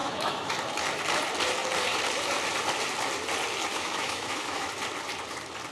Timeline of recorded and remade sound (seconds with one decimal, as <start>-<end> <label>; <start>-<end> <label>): 0.0-0.5 remade; 0.5-3.7 recorded; 3.7-4.7 remade; 4.7-5.7 recorded